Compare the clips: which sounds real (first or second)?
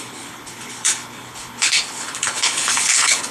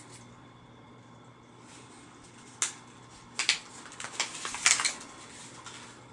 second